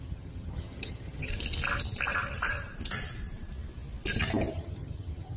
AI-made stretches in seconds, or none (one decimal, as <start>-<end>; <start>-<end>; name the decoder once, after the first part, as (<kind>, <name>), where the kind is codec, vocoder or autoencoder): 0.0-1.3 (vocoder, HiFi-GAN); 4.5-5.4